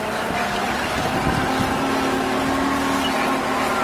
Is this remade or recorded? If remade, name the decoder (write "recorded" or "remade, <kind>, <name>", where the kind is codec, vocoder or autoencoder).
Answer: recorded